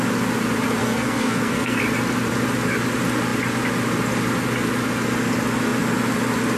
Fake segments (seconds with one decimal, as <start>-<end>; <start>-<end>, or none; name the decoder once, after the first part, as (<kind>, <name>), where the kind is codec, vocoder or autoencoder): 0.8-1.8 (codec, SNAC)